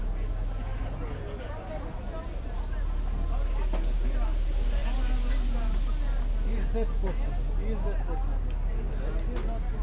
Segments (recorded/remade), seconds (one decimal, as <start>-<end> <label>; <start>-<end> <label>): 0.0-9.8 recorded